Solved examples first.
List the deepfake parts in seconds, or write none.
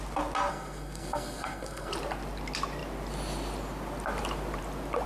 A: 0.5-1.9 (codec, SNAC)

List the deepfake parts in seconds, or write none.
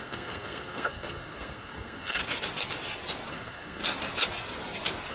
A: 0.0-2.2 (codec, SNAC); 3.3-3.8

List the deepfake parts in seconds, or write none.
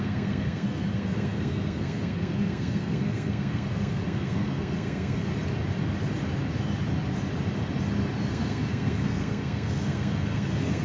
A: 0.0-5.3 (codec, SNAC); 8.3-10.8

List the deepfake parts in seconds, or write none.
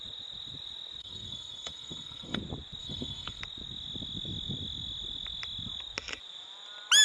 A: 1.0-2.4 (codec, SNAC); 2.8-3.4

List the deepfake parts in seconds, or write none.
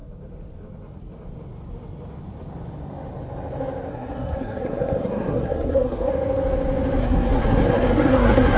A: 3.9-6.1 (codec, SNAC); 7.0-8.6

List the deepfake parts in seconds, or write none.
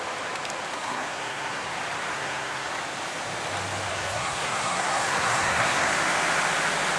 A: 0.7-1.7 (codec, SNAC); 2.1-2.7; 3.9-5.9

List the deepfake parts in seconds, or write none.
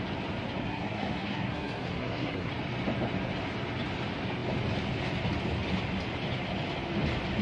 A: 0.6-2.5 (codec, SNAC)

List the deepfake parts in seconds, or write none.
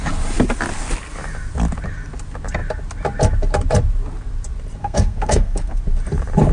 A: 4.8-5.8 (codec, SNAC)